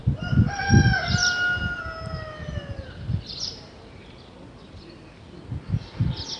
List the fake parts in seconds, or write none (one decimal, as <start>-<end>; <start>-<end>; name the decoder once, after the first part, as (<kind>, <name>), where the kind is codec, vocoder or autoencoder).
none